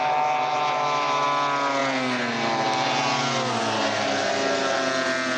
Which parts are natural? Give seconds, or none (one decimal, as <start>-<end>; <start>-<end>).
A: 0.0-5.4